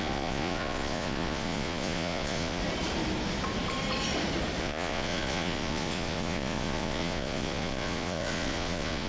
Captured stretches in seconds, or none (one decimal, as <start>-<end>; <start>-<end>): 2.6-4.6